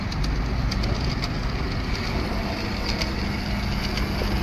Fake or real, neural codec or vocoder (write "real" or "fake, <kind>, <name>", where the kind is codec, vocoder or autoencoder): real